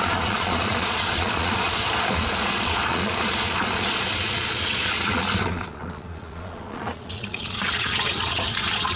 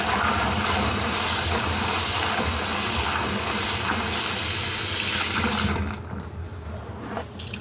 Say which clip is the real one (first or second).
second